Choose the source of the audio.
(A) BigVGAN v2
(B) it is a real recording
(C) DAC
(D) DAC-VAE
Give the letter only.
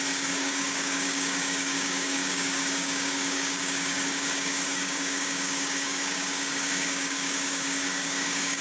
C